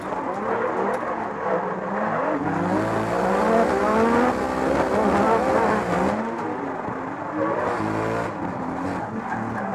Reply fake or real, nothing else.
real